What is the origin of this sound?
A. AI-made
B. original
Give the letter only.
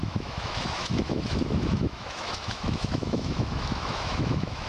A